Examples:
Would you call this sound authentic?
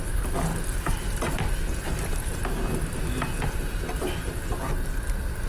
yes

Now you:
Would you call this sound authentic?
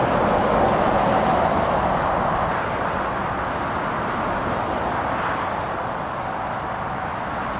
yes